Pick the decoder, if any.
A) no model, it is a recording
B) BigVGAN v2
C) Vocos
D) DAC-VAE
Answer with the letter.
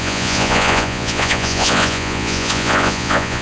C